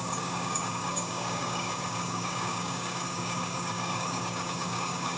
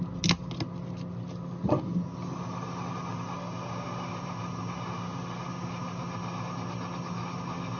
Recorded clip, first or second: second